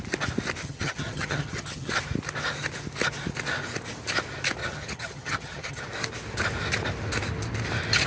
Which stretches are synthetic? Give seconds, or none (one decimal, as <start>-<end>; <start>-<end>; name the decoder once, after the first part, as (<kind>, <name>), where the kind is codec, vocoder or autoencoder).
0.6-1.9 (vocoder, HiFi-GAN); 4.6-5.8